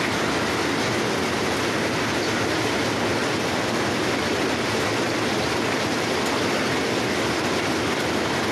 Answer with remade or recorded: recorded